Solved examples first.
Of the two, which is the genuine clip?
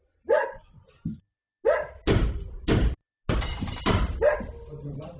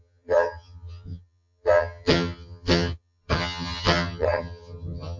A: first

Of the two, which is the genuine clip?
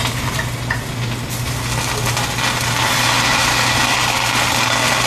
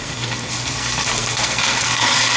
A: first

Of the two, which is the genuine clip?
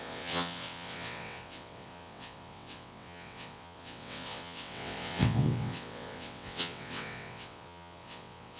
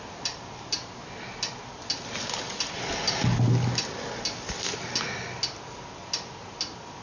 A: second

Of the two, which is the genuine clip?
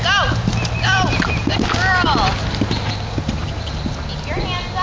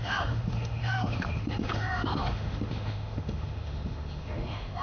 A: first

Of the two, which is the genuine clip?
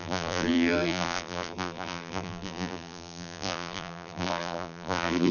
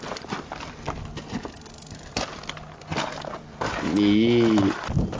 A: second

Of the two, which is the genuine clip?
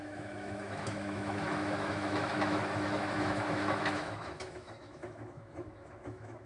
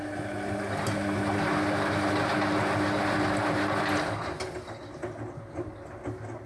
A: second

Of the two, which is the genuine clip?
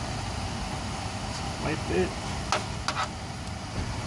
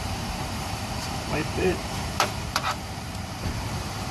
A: first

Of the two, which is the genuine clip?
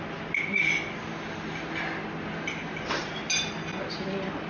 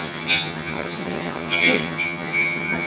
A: first